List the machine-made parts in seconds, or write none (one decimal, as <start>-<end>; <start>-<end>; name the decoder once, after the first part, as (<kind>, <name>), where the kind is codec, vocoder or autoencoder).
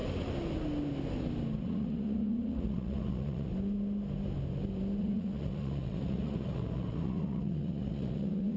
1.6-3.5 (vocoder, Vocos); 5.0-8.6